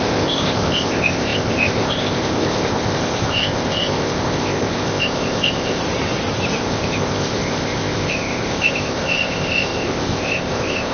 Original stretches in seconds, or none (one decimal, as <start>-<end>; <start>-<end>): 5.8-6.6